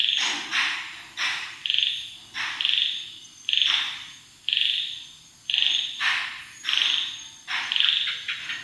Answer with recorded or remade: recorded